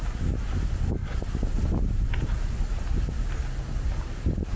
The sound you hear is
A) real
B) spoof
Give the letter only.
A